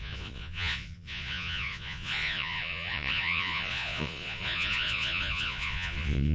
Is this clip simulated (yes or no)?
yes